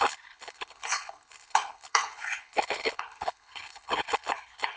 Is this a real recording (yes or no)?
no